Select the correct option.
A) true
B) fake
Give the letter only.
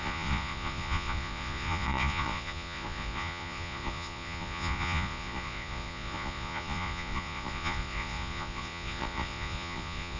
B